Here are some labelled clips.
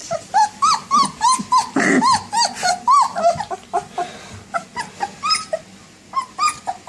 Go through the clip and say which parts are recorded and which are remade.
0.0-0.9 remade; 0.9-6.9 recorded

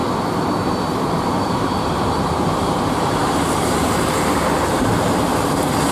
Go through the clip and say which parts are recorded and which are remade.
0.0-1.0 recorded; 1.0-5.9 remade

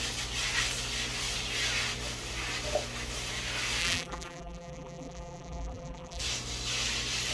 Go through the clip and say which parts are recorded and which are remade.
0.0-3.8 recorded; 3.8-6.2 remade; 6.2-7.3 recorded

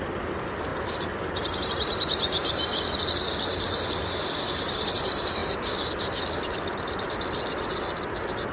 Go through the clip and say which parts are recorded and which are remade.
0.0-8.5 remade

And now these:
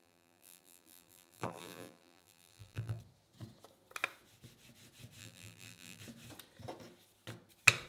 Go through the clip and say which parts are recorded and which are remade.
0.0-3.0 remade; 3.0-5.2 recorded; 5.2-6.0 remade; 6.0-7.9 recorded

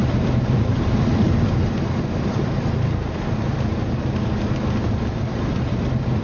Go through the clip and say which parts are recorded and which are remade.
0.0-3.1 remade; 3.1-4.8 recorded; 4.8-6.2 remade